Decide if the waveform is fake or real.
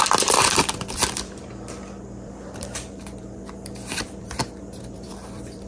fake